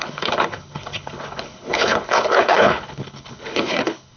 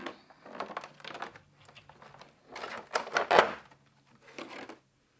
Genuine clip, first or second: second